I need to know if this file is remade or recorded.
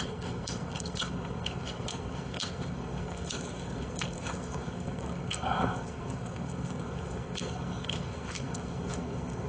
remade